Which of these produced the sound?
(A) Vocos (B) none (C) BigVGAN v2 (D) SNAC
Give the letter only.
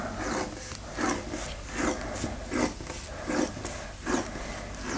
B